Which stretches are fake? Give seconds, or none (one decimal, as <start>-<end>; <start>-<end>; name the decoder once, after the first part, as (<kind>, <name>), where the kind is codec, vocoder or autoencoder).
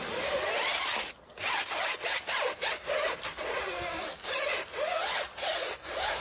none